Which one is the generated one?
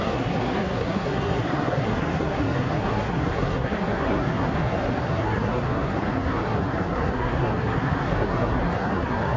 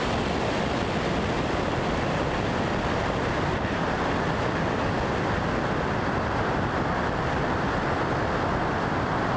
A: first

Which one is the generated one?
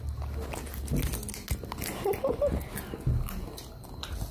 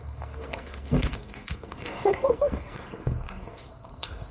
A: second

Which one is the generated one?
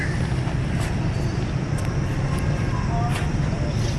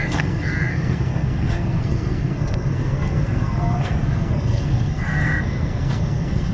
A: second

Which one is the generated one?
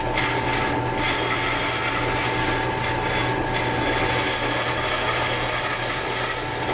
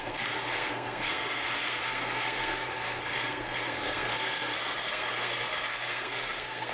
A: second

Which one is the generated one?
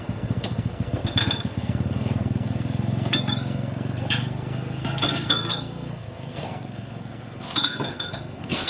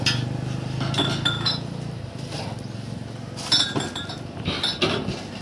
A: first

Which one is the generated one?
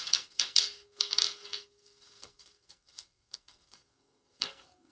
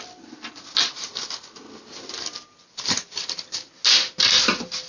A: first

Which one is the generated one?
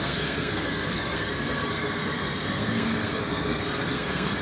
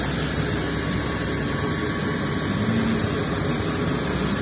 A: first